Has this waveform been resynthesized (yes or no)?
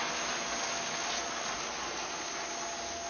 no